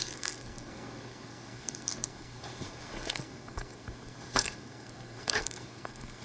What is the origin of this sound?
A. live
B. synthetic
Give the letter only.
B